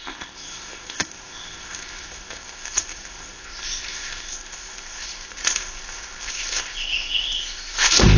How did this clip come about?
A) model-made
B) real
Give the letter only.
A